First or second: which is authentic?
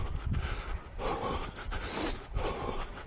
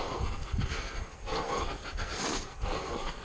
first